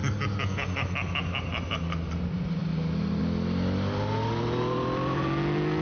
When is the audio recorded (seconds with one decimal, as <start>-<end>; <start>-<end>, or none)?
0.0-5.8

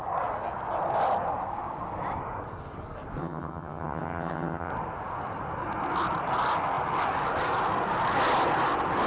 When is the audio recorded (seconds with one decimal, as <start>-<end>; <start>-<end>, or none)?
0.0-3.2; 4.7-9.1

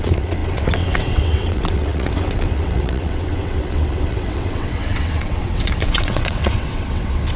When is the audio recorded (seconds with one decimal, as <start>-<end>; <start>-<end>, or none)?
none

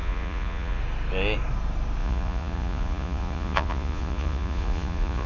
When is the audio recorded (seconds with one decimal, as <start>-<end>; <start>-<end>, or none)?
0.8-2.0

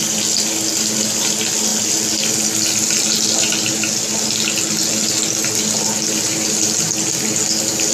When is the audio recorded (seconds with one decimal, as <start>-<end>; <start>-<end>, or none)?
0.0-7.9

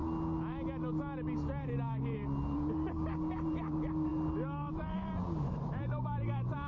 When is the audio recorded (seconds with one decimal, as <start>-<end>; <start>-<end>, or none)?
0.0-1.6